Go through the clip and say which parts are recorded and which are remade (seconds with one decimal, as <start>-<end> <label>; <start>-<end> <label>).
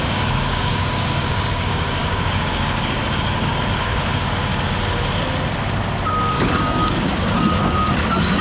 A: 0.0-4.5 remade; 4.5-6.3 recorded; 6.3-8.4 remade